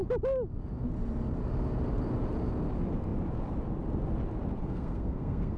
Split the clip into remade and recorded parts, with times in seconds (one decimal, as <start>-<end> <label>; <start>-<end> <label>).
0.0-4.6 recorded; 4.6-5.6 remade